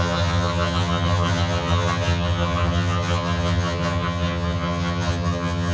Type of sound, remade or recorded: remade